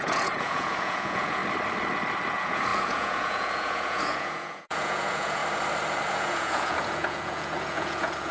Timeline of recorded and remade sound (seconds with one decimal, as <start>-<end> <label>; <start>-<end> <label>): 0.0-1.4 remade; 1.4-2.3 recorded; 2.3-5.4 remade; 5.4-6.1 recorded; 6.1-8.3 remade